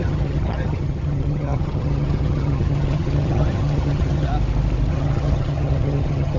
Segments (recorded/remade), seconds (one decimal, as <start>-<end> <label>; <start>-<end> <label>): 0.0-4.3 remade; 4.3-4.9 recorded; 4.9-6.4 remade